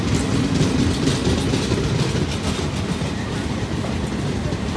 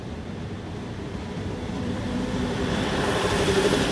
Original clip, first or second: first